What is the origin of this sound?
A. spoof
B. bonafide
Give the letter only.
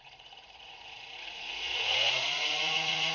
A